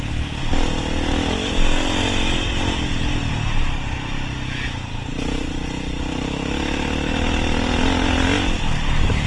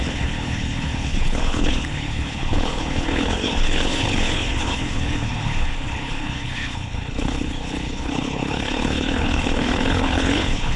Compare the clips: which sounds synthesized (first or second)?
second